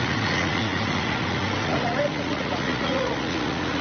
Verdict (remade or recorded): remade